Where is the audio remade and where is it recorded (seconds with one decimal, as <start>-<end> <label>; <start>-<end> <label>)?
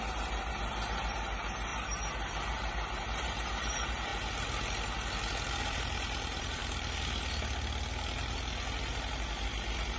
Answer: 0.0-4.1 remade; 4.1-5.5 recorded; 5.5-6.6 remade; 6.6-10.0 recorded